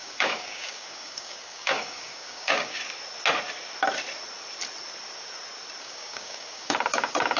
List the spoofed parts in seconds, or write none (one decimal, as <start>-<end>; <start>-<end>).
0.0-2.8; 5.8-7.4